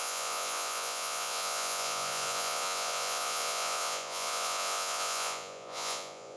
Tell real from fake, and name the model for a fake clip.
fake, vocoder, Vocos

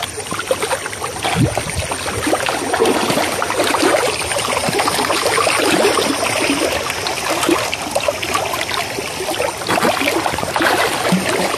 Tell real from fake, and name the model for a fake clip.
real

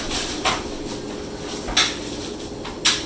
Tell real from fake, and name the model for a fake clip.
real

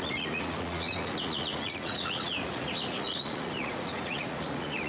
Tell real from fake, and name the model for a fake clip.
fake, vocoder, Vocos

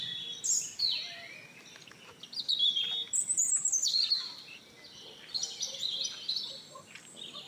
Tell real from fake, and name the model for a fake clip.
real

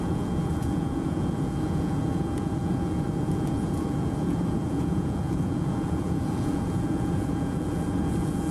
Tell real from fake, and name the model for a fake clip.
fake, vocoder, Vocos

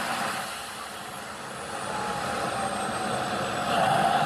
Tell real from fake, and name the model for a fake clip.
real